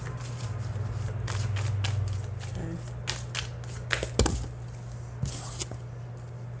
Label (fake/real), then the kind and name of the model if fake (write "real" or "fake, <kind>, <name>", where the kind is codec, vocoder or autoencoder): real